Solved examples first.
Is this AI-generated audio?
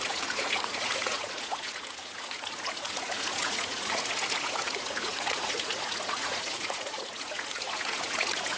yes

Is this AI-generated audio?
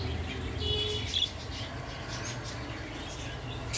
no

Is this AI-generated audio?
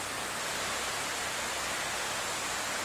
no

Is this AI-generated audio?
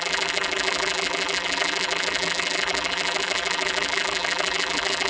yes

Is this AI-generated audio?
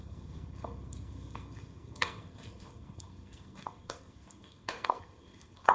yes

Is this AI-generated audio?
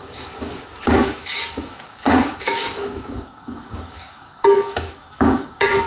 yes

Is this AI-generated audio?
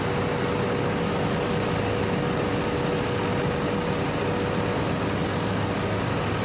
no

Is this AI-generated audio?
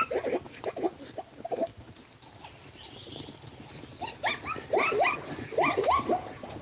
no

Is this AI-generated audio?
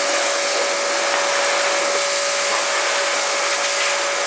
no